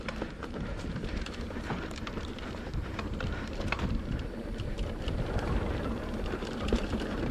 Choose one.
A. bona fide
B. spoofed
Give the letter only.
B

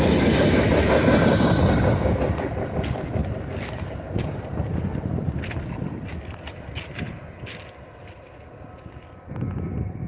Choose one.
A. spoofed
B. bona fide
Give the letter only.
B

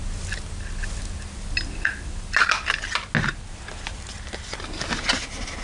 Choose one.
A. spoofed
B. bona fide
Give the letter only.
B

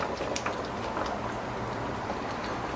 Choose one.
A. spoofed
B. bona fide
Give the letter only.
B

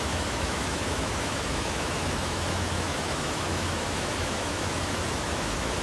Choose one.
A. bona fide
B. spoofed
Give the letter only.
B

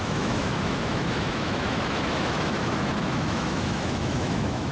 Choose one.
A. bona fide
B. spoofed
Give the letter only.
B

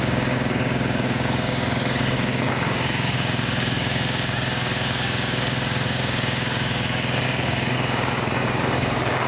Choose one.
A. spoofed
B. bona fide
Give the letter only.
A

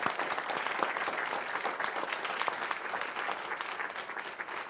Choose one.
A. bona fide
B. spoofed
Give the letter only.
A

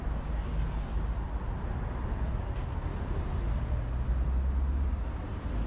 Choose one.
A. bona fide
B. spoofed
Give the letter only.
A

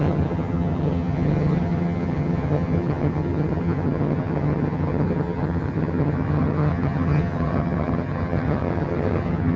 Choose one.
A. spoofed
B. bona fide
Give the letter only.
A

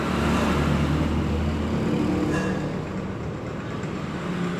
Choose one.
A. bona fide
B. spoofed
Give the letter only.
A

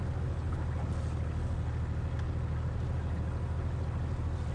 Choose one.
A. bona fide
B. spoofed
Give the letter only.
A